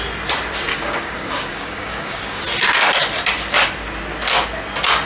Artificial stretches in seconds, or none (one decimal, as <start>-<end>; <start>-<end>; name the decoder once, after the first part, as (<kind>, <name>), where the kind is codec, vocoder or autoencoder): 0.7-2.4 (codec, DAC)